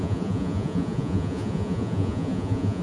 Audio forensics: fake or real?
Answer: fake